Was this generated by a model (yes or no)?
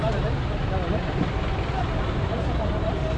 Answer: no